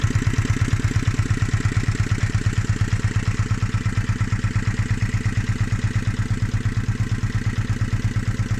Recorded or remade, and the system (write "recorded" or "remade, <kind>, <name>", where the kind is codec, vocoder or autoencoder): recorded